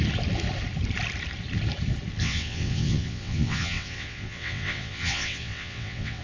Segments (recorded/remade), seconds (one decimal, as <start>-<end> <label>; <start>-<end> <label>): 0.0-2.2 recorded; 2.2-6.2 remade